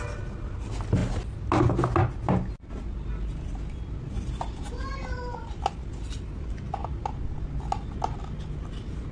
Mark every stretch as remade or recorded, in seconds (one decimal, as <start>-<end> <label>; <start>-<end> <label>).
0.0-9.1 recorded